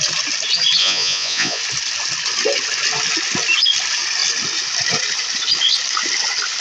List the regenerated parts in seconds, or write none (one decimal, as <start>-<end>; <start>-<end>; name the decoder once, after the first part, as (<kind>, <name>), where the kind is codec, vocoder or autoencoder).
0.8-1.6 (vocoder, Vocos)